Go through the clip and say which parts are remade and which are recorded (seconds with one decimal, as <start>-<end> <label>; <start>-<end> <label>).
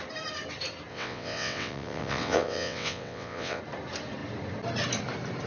0.0-0.9 recorded; 0.9-3.6 remade; 3.6-5.5 recorded